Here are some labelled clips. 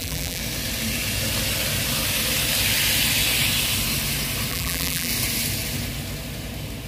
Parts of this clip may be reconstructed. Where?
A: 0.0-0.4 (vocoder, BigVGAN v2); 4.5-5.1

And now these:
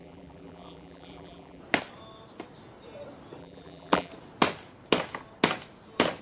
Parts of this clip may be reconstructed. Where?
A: 0.0-1.6 (vocoder, BigVGAN v2); 3.4-4.1

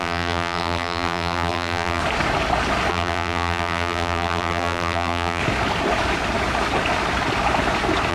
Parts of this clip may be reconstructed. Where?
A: 0.0-2.0 (vocoder, BigVGAN v2); 2.9-5.4

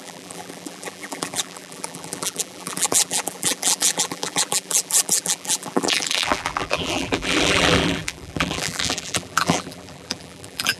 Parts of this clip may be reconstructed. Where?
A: 0.0-10.8 (vocoder, BigVGAN v2)

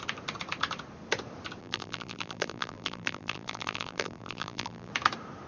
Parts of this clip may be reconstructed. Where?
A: 1.6-4.9 (vocoder, BigVGAN v2)